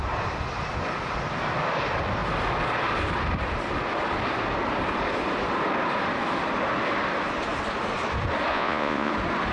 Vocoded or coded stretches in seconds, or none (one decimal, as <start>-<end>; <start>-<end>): 8.5-9.1